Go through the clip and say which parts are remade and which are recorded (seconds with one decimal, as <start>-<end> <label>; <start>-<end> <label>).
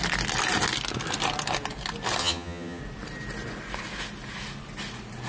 0.0-2.2 recorded; 2.2-2.8 remade; 2.8-5.3 recorded